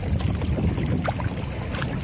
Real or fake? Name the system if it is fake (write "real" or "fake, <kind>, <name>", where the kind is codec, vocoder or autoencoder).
real